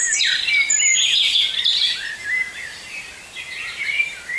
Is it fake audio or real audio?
fake